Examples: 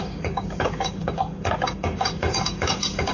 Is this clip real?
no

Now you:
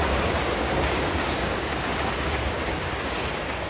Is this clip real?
no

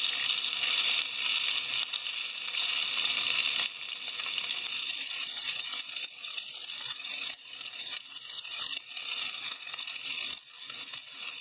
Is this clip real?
yes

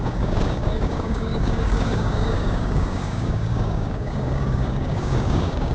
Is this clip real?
no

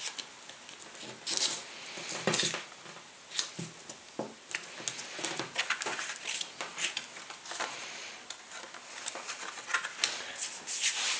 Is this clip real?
yes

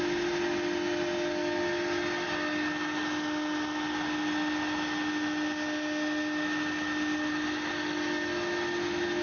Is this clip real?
yes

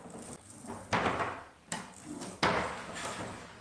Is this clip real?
yes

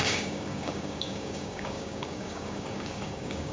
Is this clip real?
no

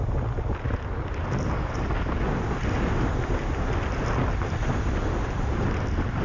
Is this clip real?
yes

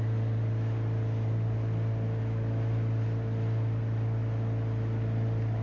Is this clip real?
yes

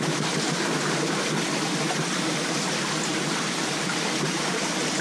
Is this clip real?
yes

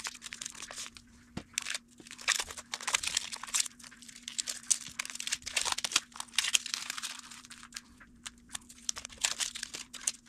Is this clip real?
yes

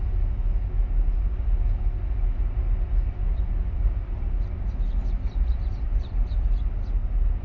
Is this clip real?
yes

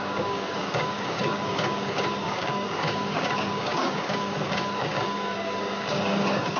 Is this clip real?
no